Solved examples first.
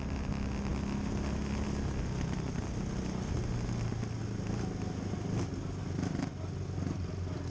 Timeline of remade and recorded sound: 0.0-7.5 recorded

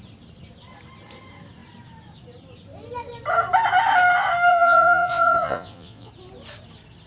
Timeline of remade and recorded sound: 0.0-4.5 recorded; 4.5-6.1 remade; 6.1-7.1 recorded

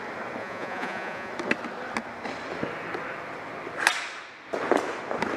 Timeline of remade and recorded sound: 0.0-0.4 recorded; 0.4-1.3 remade; 1.3-5.4 recorded